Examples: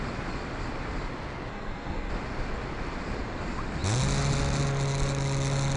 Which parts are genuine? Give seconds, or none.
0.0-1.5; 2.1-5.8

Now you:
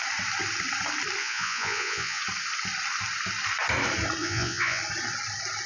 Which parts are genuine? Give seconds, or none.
0.0-1.2; 2.2-4.2; 4.8-5.7

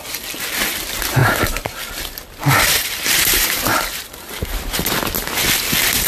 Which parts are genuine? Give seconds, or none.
0.0-1.2; 4.9-6.1

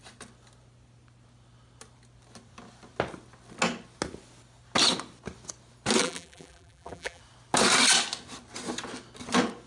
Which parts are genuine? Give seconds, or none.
0.0-6.0; 7.2-9.7

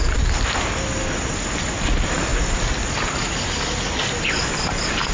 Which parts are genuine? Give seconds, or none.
0.0-5.1

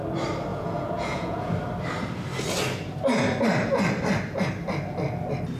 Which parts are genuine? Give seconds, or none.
0.0-0.5; 1.5-5.6

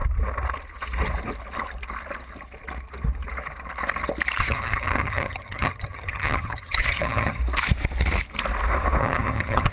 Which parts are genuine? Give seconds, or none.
0.0-4.4; 7.4-9.0

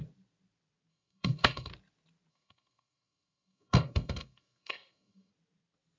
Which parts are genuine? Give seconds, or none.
0.0-0.9; 1.7-2.3; 5.3-6.0